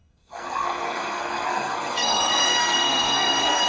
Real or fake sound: fake